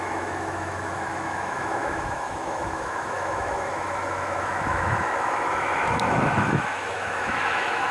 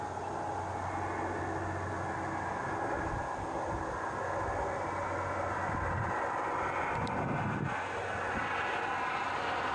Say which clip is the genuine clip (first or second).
second